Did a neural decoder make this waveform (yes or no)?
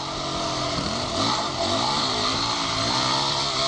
no